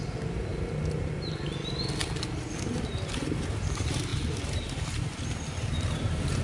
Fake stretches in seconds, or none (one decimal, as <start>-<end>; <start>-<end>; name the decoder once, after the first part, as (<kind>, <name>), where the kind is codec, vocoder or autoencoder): 0.5-1.1 (vocoder, BigVGAN v2); 4.1-6.4